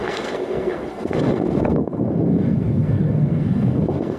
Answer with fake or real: fake